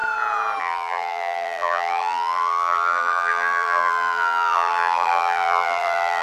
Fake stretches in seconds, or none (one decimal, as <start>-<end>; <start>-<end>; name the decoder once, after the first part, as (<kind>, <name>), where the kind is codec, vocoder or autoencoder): 0.6-6.2 (vocoder, BigVGAN v2)